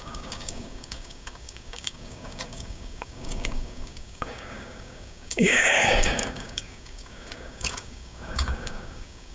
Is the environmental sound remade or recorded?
remade